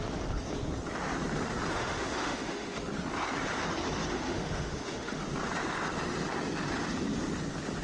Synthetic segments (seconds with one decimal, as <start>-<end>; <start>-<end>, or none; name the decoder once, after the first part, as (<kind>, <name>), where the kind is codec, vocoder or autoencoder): 1.7-2.8 (autoencoder, DAC-VAE); 4.1-5.2